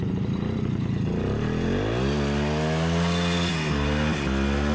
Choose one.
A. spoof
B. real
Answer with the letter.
B